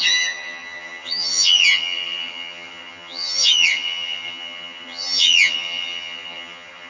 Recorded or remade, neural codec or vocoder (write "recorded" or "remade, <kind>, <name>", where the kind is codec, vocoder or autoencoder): remade, vocoder, HiFi-GAN